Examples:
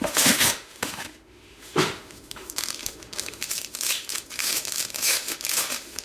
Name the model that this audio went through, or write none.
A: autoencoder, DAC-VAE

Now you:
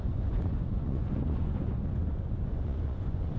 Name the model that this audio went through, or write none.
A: vocoder, Vocos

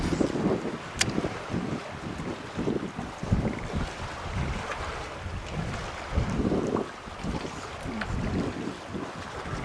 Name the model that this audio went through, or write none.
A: none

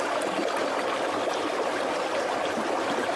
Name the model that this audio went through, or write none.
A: none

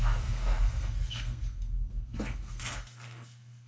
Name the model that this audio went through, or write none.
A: codec, SNAC